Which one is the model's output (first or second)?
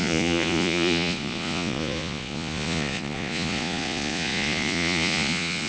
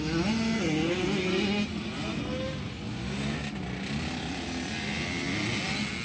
first